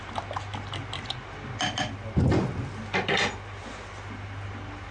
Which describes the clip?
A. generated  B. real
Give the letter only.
B